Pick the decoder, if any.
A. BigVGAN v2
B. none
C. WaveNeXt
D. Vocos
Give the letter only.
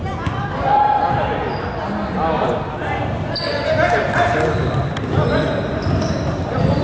B